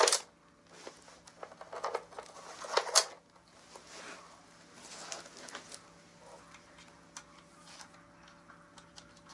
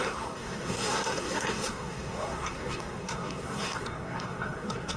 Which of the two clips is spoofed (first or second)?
second